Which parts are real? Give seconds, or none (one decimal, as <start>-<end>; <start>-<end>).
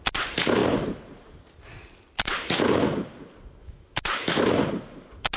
0.0-3.6; 4.5-5.4